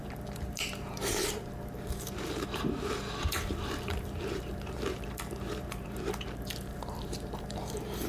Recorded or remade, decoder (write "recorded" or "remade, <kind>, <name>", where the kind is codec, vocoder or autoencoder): remade, vocoder, BigVGAN v2